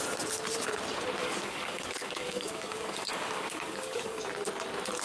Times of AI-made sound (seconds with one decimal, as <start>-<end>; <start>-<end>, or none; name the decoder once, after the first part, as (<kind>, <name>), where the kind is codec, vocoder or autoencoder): 1.2-4.2 (codec, DAC)